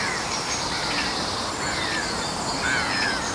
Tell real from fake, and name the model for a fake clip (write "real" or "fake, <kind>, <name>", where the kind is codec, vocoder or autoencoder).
real